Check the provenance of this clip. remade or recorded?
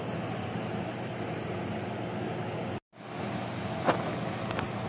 recorded